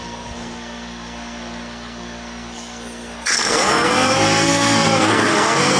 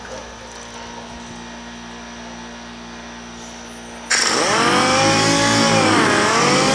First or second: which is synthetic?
first